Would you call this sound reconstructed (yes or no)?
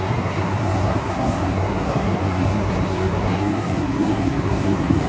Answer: yes